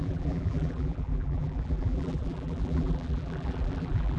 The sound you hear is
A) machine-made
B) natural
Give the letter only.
A